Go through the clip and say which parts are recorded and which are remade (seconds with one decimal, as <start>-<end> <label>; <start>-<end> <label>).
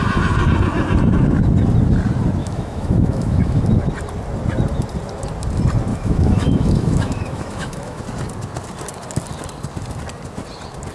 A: 0.0-2.4 recorded; 2.4-3.6 remade; 3.6-5.9 recorded; 5.9-8.0 remade; 8.0-10.9 recorded